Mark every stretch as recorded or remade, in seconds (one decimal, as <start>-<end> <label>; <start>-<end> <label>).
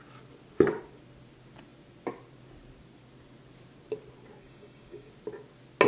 0.0-4.4 recorded; 4.4-5.1 remade; 5.1-5.9 recorded